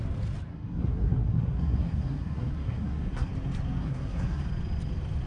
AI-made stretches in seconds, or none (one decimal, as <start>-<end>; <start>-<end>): 0.5-3.3; 3.8-4.4